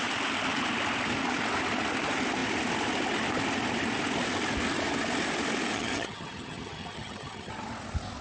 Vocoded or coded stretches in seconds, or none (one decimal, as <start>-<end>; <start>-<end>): 5.7-7.5